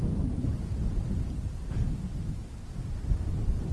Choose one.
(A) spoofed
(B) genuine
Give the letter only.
B